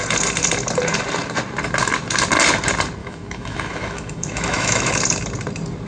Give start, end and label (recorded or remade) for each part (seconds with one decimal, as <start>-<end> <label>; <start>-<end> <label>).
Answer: 0.0-3.0 recorded; 3.0-4.9 remade; 4.9-5.9 recorded